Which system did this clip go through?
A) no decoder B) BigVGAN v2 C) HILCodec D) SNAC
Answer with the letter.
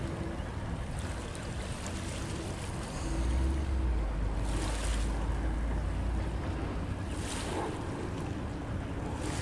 A